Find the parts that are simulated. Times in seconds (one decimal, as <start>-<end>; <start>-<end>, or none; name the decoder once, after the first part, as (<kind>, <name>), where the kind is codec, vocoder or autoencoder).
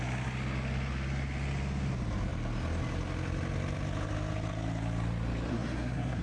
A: 5.5-6.2 (codec, SNAC)